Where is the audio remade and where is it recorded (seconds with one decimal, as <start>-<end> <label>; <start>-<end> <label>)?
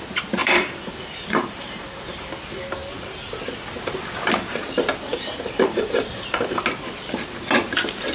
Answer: 0.0-0.4 recorded; 0.4-2.3 remade; 2.3-5.1 recorded; 5.1-6.6 remade; 6.6-8.1 recorded